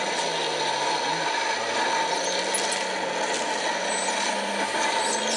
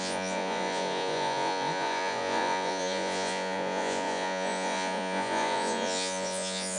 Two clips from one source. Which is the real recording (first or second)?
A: first